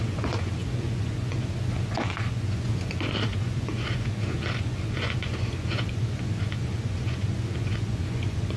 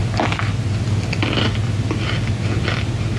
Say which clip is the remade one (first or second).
first